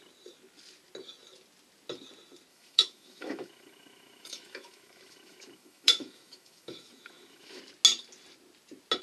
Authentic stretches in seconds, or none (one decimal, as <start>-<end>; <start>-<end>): 0.0-2.5; 7.6-9.0